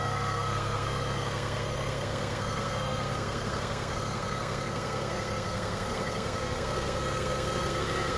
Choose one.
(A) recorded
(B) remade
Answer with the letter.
B